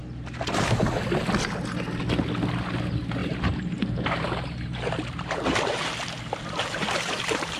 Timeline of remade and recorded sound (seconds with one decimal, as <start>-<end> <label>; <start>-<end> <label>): 0.0-3.2 recorded; 3.2-5.9 remade; 5.9-6.6 recorded; 6.6-7.6 remade